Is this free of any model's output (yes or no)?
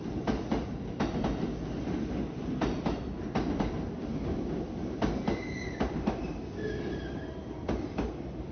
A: yes